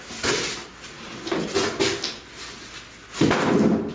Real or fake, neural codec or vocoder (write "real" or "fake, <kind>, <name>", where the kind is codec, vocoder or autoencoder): real